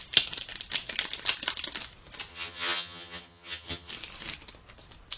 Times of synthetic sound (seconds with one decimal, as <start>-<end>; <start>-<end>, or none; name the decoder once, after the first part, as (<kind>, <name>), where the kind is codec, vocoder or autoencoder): 2.3-3.9 (vocoder, HiFi-GAN)